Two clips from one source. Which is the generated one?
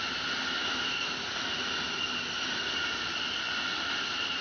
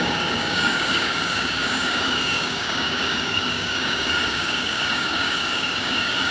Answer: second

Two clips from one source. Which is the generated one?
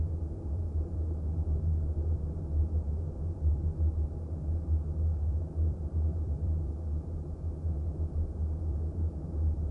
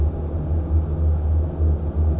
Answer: first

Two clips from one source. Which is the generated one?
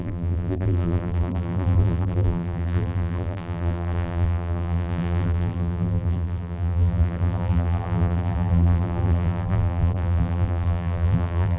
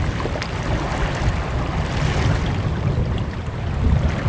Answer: first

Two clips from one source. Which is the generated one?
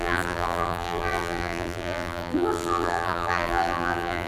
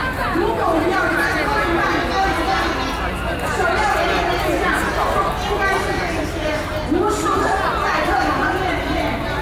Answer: first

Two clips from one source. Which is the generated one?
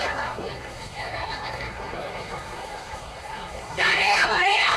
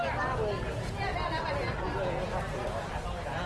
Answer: first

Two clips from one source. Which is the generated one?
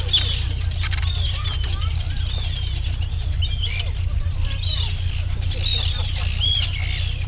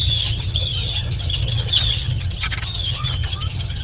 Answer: second